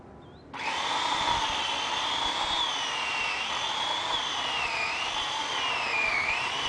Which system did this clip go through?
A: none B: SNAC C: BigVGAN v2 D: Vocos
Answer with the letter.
A